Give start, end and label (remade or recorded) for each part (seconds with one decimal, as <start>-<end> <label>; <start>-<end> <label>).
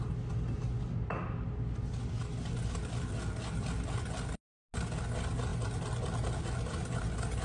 0.0-7.4 recorded